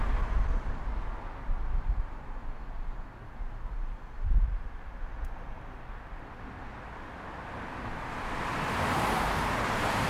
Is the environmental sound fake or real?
real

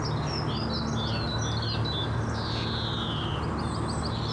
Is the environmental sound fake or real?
real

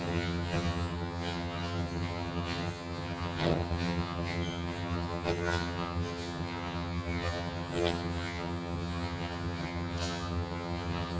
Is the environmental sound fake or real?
fake